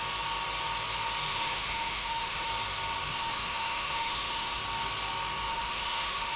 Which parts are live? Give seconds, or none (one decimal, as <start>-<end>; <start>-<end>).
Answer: 0.0-1.3; 2.5-3.1; 4.6-5.5